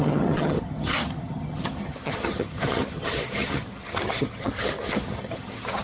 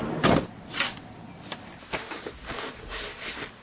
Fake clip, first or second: first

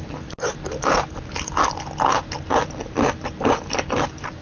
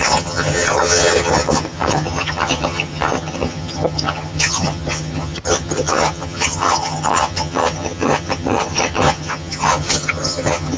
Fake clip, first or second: second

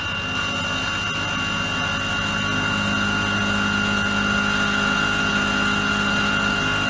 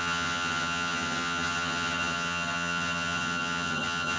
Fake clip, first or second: second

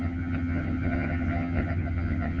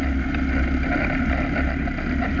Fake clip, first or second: first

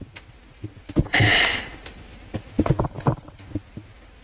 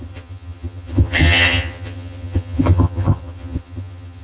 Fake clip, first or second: second